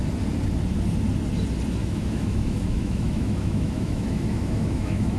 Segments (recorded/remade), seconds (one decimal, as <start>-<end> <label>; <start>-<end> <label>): 0.0-1.8 recorded; 1.8-5.2 remade